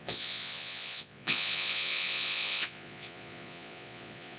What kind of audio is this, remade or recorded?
remade